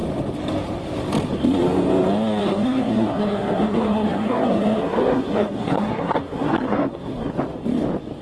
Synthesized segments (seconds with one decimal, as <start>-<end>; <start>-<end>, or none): 2.4-7.3